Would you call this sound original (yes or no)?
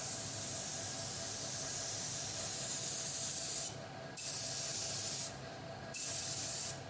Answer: yes